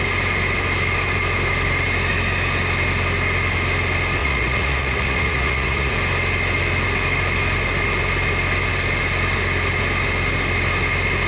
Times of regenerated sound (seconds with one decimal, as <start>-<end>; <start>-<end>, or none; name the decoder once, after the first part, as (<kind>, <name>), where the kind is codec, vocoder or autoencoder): 4.2-5.9 (vocoder, Vocos)